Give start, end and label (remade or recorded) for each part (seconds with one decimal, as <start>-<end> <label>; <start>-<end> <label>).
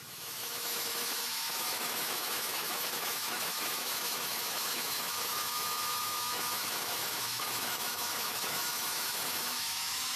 0.0-10.2 remade